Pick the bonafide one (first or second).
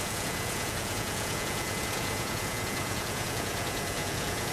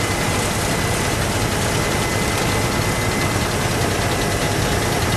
second